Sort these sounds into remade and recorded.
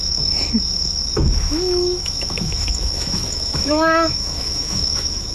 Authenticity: remade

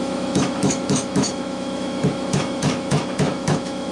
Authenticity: remade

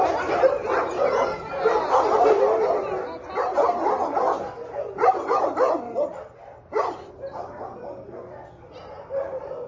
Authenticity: recorded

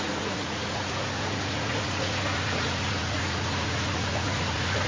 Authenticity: remade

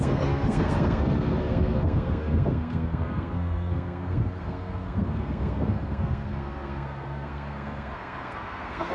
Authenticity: remade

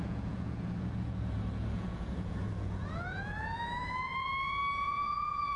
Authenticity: remade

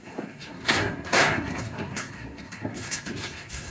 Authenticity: remade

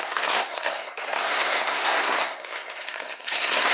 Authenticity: remade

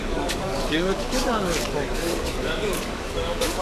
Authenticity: remade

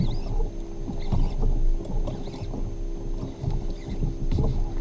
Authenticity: recorded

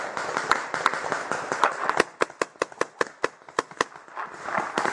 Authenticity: recorded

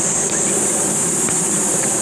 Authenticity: recorded